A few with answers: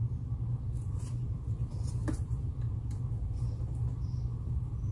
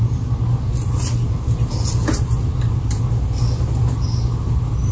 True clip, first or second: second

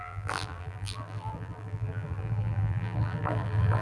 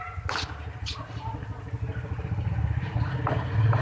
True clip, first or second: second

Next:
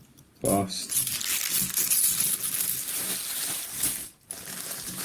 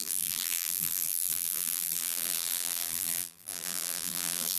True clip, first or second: first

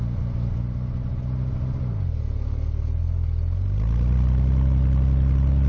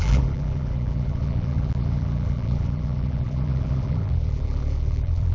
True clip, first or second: first